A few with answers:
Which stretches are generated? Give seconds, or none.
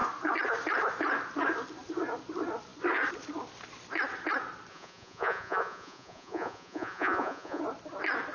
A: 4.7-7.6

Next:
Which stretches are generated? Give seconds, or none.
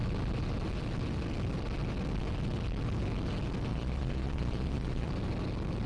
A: 3.7-5.1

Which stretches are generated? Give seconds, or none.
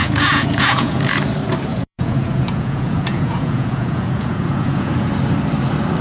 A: 0.0-1.0; 1.7-5.1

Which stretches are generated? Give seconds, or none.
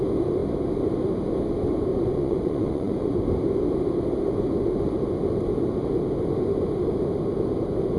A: 1.9-3.2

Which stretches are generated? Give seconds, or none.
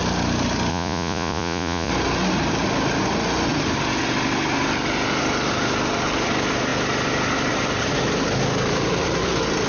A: 0.7-1.9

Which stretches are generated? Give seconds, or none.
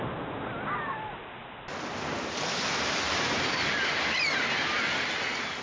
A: none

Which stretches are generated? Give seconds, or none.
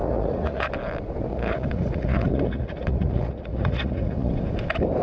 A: 0.0-0.7; 1.3-4.3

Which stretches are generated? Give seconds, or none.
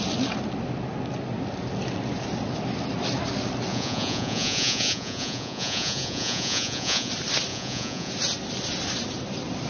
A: 3.7-7.1; 7.5-8.1